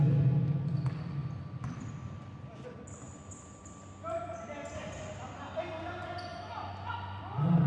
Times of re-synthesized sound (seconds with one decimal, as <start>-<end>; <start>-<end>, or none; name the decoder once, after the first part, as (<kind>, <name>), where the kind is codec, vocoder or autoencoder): none